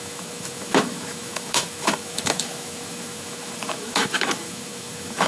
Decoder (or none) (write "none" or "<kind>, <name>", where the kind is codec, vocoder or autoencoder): autoencoder, DAC-VAE